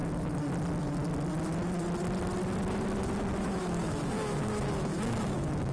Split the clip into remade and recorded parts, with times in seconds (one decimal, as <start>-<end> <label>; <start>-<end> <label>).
0.0-3.4 recorded; 3.4-5.7 remade